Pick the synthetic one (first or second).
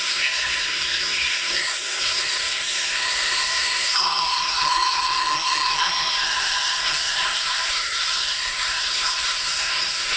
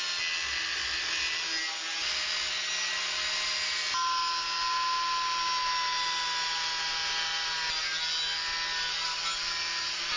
first